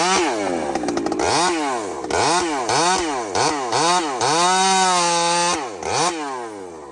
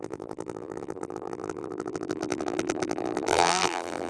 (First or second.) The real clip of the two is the first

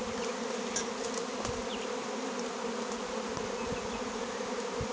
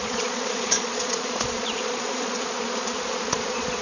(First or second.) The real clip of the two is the first